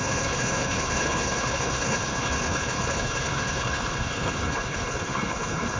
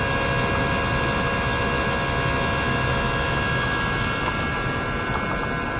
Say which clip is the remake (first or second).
first